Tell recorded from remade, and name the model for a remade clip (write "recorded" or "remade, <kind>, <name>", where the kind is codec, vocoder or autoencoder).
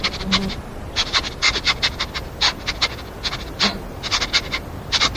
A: recorded